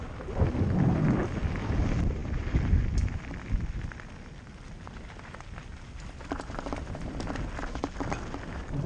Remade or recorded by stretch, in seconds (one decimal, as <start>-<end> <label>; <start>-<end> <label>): 0.0-8.9 recorded